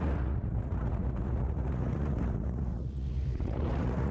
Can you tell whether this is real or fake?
fake